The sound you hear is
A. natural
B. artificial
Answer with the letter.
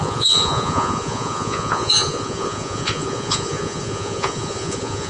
B